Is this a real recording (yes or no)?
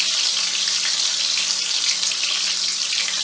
yes